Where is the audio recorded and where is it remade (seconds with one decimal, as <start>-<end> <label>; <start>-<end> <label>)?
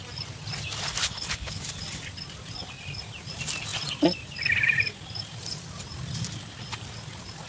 0.0-1.0 recorded; 1.0-1.6 remade; 1.6-7.5 recorded